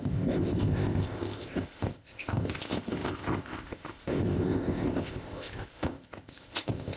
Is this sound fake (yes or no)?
yes